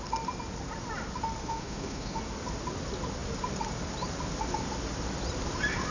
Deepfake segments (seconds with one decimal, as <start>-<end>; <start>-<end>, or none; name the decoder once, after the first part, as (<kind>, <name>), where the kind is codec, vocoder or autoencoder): 1.4-2.2 (autoencoder, DAC-VAE)